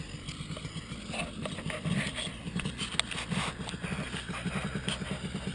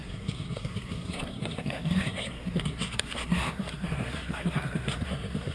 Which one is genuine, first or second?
first